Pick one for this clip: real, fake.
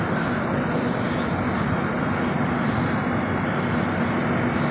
real